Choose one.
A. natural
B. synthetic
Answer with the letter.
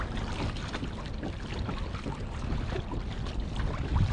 A